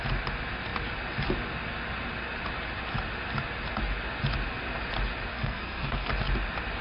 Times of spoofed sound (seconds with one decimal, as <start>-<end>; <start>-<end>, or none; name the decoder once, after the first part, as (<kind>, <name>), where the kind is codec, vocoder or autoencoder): 5.3-6.1 (codec, SNAC)